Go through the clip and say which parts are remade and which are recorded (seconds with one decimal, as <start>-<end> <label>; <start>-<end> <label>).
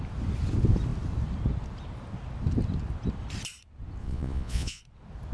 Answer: 0.0-4.0 recorded; 4.0-4.8 remade; 4.8-5.3 recorded